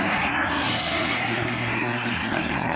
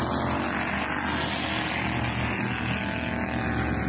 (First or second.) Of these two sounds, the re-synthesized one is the first